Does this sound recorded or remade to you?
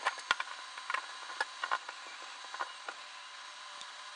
recorded